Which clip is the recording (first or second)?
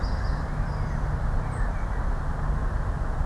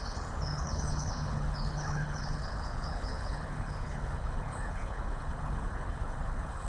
first